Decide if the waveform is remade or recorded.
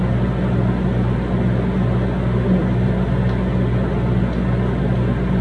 recorded